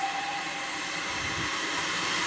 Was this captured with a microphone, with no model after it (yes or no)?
no